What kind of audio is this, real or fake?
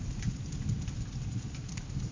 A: real